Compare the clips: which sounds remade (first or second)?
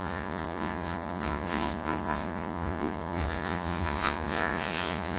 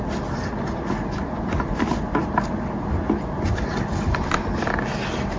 first